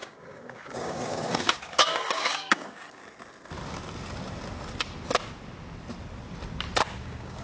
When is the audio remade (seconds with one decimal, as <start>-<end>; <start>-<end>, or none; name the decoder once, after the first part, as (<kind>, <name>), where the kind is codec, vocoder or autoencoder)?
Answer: 0.0-3.0 (codec, DAC); 7.0-7.4